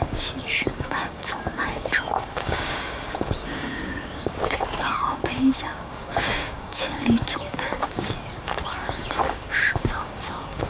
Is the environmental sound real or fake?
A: fake